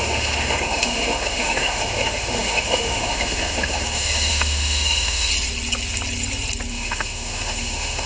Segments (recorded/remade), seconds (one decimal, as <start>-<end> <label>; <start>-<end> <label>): 0.0-5.3 remade; 5.3-6.7 recorded; 6.7-8.1 remade